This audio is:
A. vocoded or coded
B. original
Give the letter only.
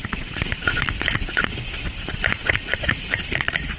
A